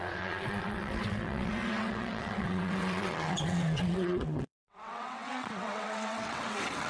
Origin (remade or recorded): remade